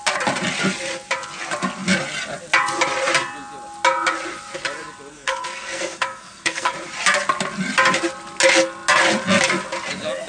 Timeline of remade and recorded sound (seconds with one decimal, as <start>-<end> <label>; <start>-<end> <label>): 0.0-5.1 recorded; 5.1-6.7 remade; 6.7-10.3 recorded